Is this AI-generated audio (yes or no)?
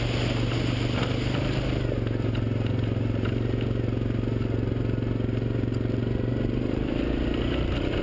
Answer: no